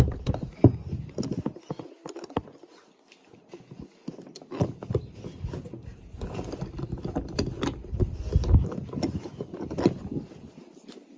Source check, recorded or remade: recorded